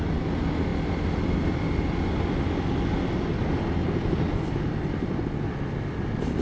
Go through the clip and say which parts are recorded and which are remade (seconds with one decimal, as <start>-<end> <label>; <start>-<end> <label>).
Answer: 0.0-6.4 recorded